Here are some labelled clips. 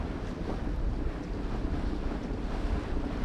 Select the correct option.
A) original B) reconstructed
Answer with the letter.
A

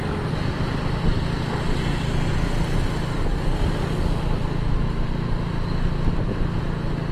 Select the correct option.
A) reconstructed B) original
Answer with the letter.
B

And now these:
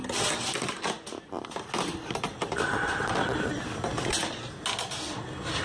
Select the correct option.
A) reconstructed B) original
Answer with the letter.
B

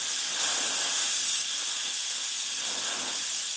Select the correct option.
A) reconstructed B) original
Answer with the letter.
B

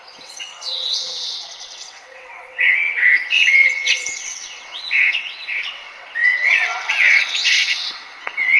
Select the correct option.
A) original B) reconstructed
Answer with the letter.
B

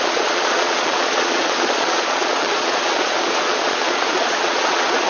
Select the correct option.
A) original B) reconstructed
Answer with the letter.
B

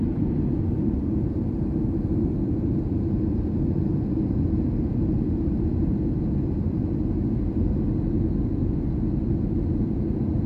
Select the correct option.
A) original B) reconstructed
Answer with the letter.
A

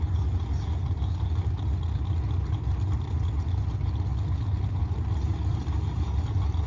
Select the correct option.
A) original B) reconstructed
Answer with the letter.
A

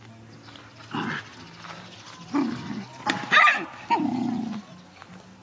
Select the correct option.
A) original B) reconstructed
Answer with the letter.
A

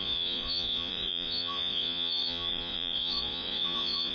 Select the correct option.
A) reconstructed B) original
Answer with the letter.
A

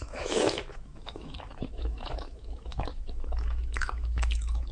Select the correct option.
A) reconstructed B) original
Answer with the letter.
A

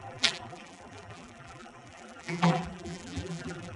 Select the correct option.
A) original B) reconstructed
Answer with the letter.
B